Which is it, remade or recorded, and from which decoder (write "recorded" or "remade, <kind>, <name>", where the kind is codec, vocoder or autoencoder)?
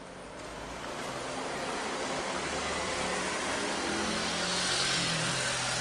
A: recorded